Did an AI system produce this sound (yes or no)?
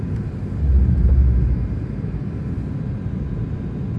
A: no